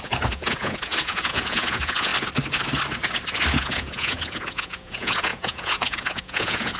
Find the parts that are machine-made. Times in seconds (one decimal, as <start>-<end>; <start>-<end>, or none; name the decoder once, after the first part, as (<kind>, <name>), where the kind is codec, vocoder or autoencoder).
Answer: 0.0-2.1 (vocoder, Vocos); 3.5-6.8